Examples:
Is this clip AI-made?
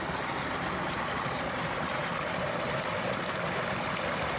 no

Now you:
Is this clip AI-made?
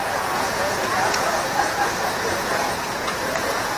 yes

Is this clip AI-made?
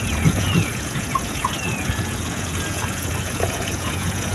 yes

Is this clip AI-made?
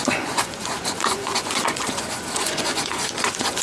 yes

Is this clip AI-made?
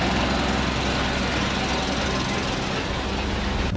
no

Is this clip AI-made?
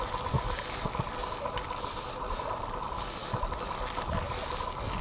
no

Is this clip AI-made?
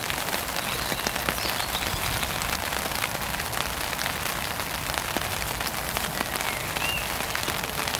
no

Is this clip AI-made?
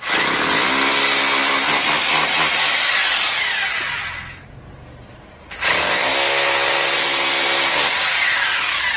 no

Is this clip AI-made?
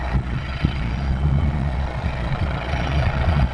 yes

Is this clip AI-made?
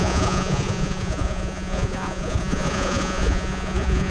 yes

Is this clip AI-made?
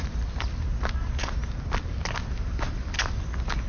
no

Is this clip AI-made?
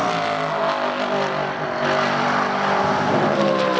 no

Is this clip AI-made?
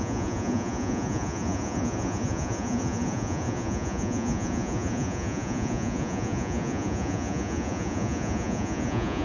yes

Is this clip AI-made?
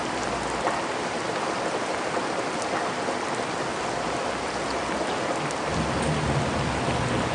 no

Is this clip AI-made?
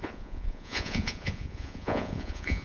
yes